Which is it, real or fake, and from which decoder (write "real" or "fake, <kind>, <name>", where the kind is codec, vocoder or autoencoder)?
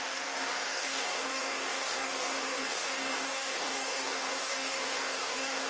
fake, codec, DAC